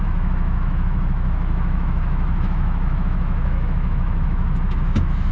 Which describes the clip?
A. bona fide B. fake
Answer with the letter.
B